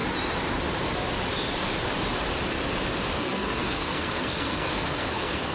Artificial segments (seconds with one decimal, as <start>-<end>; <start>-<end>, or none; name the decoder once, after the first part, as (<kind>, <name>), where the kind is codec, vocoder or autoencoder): 3.1-5.5 (codec, SNAC)